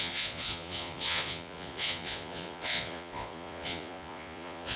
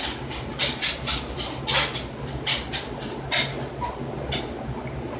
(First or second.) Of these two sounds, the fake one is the first